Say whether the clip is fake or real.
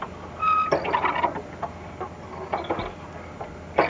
real